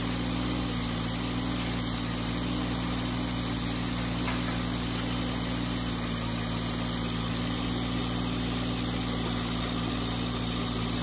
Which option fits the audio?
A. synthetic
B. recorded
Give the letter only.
B